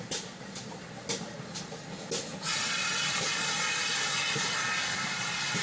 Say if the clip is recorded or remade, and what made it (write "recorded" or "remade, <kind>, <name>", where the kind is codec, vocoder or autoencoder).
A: recorded